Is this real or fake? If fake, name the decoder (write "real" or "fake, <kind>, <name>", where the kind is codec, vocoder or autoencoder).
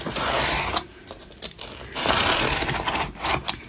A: real